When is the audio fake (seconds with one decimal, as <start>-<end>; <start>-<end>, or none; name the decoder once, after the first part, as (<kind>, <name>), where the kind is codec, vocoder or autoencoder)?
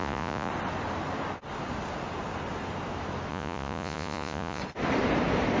0.0-0.5 (vocoder, Vocos); 3.3-4.6